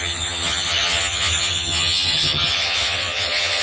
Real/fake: fake